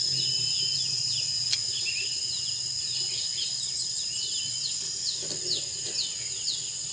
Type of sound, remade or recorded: recorded